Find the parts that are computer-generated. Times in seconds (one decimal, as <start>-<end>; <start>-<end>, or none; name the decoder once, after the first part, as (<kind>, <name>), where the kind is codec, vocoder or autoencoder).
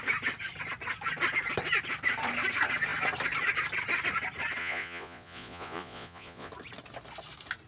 4.6-6.5 (vocoder, Vocos)